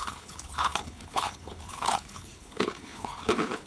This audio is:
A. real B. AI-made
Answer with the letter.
B